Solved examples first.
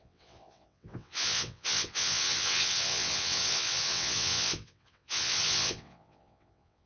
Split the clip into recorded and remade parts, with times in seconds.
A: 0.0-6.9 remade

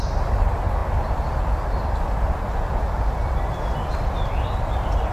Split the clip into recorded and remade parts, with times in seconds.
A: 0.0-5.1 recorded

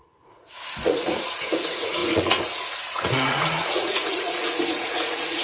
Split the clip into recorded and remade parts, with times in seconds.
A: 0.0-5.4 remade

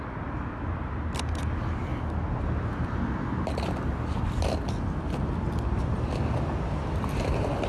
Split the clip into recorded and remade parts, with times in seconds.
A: 0.0-7.7 recorded